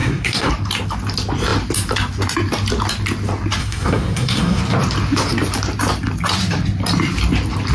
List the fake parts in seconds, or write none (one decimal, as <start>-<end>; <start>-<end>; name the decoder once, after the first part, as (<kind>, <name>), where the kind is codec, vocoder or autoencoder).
0.0-0.5 (codec, SNAC); 3.6-4.6